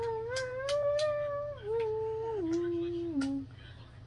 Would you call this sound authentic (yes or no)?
yes